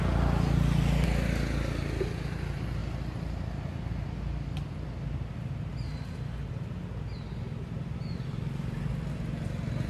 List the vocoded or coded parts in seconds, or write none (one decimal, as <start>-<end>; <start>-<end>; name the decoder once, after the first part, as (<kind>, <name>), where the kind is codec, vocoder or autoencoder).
none